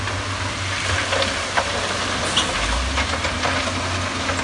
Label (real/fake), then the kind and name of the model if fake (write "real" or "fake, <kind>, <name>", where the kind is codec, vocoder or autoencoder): real